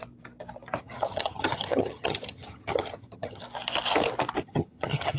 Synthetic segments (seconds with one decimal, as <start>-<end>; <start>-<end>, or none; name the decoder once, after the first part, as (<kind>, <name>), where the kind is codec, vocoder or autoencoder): 0.8-3.4 (vocoder, HiFi-GAN); 4.4-5.2